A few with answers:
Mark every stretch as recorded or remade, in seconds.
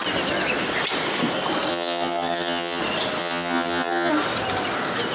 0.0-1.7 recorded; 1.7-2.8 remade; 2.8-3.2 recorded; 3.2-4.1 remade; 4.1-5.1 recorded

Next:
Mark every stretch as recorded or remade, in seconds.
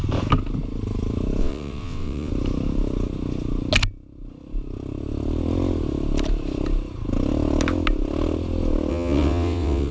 0.0-1.4 recorded; 1.4-2.3 remade; 2.3-8.9 recorded; 8.9-9.9 remade